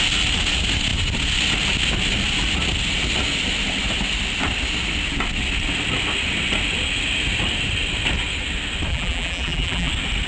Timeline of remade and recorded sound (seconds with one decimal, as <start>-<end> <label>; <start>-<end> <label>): 0.0-8.9 recorded; 8.9-9.9 remade; 9.9-10.3 recorded